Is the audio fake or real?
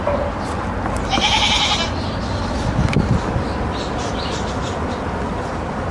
real